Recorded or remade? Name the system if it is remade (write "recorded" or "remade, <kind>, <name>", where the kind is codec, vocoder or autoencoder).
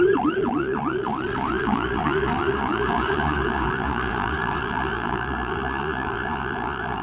remade, vocoder, Vocos